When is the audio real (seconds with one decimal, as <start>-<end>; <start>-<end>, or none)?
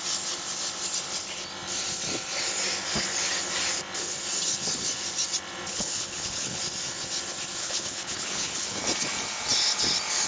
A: 0.0-5.7; 6.6-7.6; 8.8-10.3